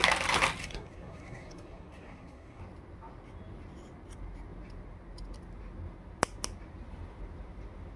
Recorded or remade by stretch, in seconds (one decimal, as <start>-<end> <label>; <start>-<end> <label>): 0.0-0.6 recorded; 0.6-2.6 remade; 2.6-8.0 recorded